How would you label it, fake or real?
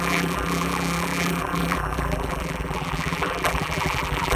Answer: fake